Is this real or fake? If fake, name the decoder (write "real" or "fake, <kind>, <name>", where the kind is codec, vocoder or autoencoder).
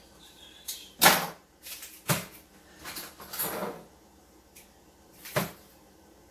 fake, vocoder, BigVGAN v2